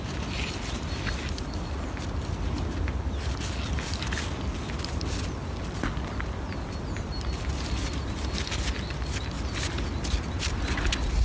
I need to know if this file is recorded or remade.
recorded